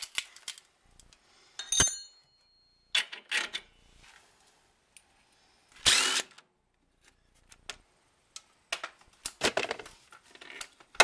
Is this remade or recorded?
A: recorded